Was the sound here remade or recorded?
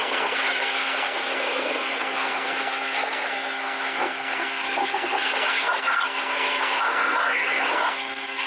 remade